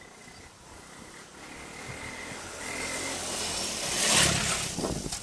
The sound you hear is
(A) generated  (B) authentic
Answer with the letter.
B